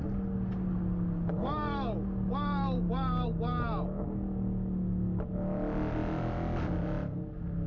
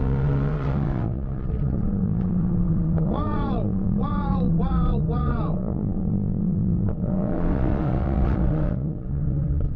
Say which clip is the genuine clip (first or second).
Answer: first